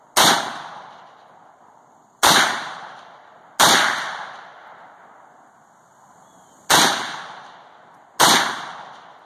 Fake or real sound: real